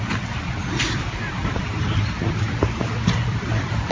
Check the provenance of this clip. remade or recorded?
remade